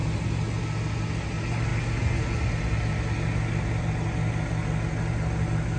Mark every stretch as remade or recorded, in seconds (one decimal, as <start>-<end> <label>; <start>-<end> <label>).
0.0-5.8 recorded